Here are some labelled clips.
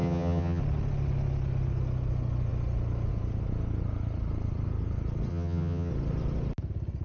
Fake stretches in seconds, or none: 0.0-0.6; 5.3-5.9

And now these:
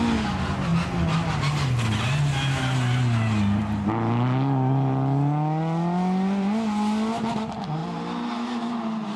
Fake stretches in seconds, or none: none

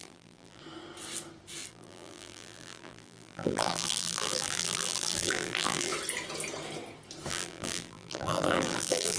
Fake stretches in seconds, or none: 0.0-0.6; 1.7-5.9; 7.3-9.2

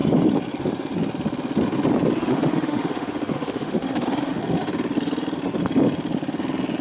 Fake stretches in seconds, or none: 2.2-4.4